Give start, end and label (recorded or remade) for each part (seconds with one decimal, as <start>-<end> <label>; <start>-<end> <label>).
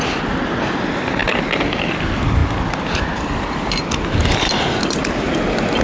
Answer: 0.0-5.8 recorded